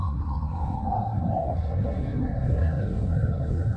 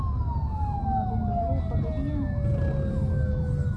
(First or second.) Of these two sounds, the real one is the second